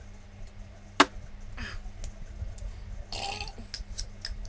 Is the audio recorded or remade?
recorded